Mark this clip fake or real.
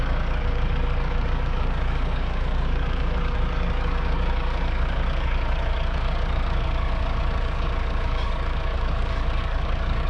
fake